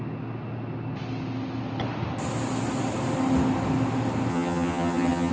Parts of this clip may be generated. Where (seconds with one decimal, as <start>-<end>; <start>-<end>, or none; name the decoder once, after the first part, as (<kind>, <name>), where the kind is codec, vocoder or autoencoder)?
4.3-5.3 (vocoder, HiFi-GAN)

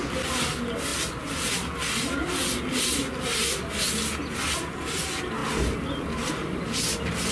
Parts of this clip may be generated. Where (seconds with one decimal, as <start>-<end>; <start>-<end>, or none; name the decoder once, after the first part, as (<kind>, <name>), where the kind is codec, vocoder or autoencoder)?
none